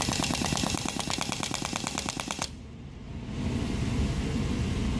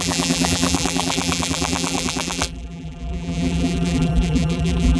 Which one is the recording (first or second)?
first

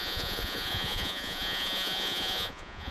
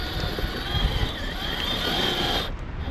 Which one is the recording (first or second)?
second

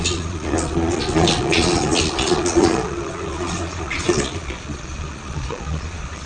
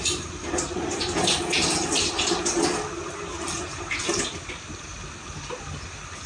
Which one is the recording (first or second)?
second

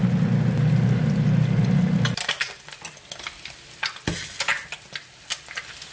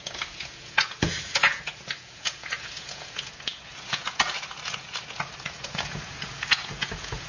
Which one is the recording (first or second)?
first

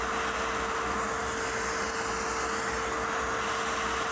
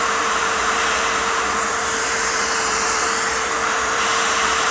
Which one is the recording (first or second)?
first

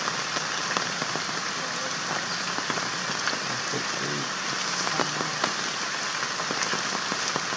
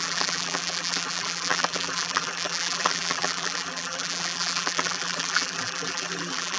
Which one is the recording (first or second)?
first